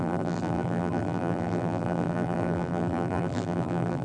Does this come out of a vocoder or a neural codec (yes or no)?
yes